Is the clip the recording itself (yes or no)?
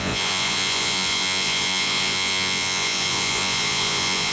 no